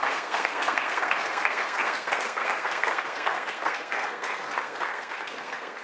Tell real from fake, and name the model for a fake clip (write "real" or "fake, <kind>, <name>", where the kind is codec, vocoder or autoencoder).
fake, codec, SNAC